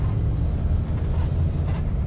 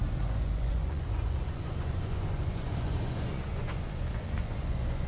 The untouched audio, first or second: first